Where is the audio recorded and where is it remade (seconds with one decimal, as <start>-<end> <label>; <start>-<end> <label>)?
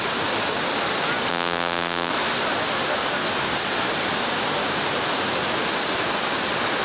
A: 0.0-1.3 recorded; 1.3-2.1 remade; 2.1-6.8 recorded